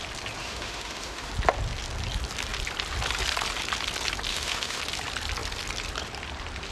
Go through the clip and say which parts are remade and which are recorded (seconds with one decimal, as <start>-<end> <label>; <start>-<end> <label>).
0.0-0.4 recorded; 0.4-1.3 remade; 1.3-4.3 recorded; 4.3-4.8 remade; 4.8-6.7 recorded